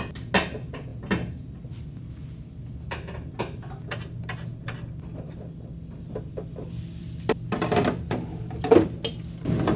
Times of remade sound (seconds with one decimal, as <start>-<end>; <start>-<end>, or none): 4.5-7.0